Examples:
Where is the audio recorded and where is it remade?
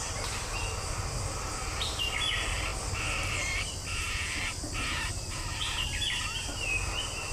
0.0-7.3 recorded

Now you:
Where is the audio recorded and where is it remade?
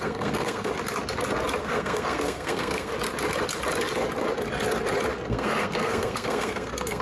0.0-0.7 remade; 0.7-1.6 recorded; 1.6-2.9 remade; 2.9-5.3 recorded; 5.3-7.0 remade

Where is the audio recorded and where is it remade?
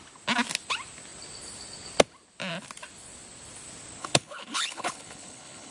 0.0-4.0 recorded; 4.0-5.7 remade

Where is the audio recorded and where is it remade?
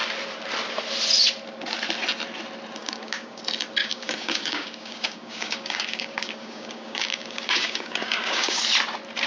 0.0-2.8 recorded; 2.8-3.4 remade; 3.4-3.8 recorded; 3.8-8.6 remade; 8.6-9.3 recorded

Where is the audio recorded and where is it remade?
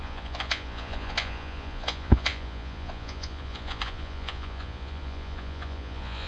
0.0-6.3 remade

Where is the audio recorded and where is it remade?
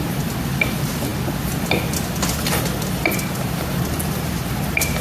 0.0-5.0 recorded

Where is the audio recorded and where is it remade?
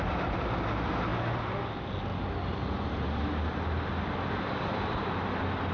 0.0-5.7 recorded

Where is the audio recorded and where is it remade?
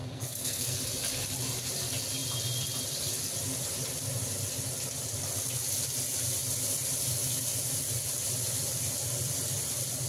0.0-0.8 remade; 0.8-10.1 recorded